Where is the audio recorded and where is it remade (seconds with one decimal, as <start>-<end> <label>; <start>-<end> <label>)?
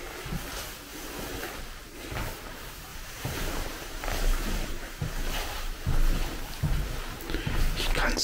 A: 0.0-0.9 recorded; 0.9-1.4 remade; 1.4-2.9 recorded; 2.9-5.7 remade; 5.7-8.2 recorded